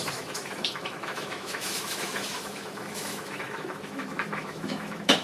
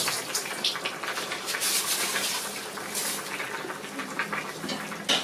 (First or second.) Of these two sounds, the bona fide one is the second